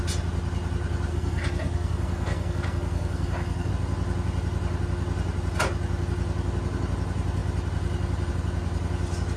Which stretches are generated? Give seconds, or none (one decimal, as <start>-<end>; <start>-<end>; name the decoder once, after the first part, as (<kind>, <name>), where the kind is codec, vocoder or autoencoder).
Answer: 1.1-3.7 (codec, SNAC)